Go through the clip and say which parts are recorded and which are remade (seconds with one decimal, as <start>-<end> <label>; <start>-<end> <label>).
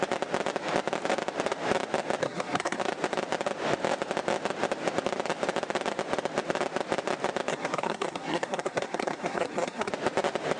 0.0-2.2 recorded; 2.2-2.8 remade; 2.8-7.5 recorded; 7.5-9.9 remade; 9.9-10.6 recorded